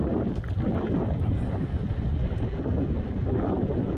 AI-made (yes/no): no